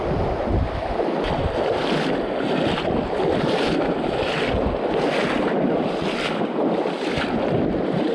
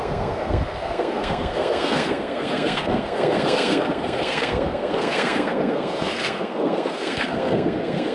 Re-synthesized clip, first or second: second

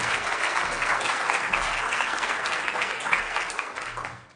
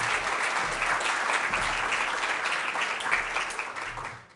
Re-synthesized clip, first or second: first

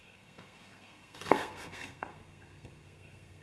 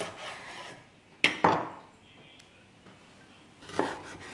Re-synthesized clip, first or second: first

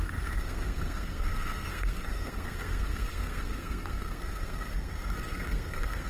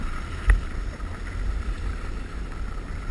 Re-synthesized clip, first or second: first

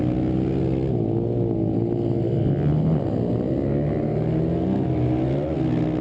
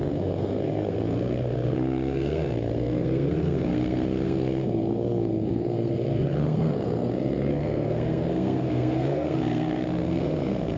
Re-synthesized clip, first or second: second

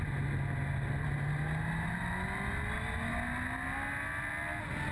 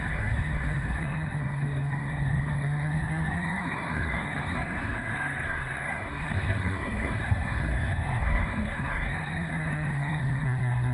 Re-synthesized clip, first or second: second